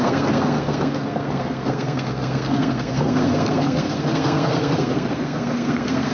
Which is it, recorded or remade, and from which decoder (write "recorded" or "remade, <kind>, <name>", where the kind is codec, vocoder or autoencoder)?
remade, codec, SNAC